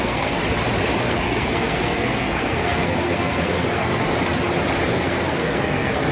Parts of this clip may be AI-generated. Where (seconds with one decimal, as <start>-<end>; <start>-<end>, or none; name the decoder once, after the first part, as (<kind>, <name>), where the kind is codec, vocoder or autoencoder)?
0.0-0.4 (codec, SNAC); 1.0-3.9; 4.9-6.1